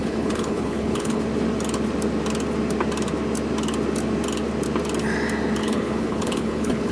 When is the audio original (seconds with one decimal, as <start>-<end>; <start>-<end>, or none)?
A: 1.2-5.6